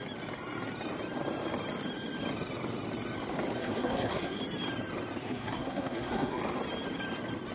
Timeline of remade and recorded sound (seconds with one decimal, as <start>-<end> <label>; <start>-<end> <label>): 0.0-3.6 recorded; 3.6-4.4 remade; 4.4-5.2 recorded; 5.2-6.4 remade; 6.4-7.5 recorded